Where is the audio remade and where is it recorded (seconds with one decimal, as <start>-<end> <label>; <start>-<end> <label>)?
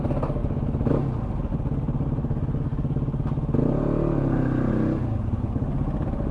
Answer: 0.0-0.4 recorded; 0.4-1.0 remade; 1.0-6.3 recorded